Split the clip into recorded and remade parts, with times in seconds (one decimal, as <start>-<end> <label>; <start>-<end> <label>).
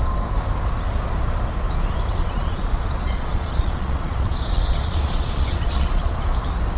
0.0-2.2 recorded; 2.2-6.3 remade; 6.3-6.8 recorded